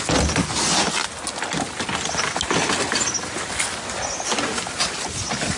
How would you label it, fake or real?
real